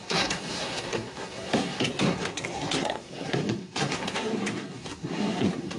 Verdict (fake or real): fake